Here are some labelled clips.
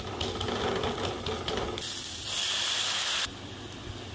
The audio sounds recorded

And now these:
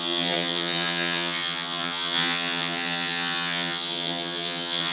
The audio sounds remade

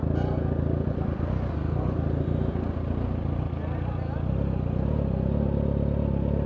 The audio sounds recorded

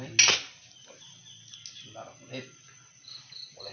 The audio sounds recorded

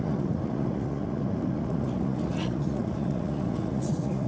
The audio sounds remade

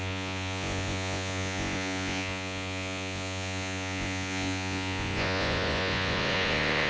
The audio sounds remade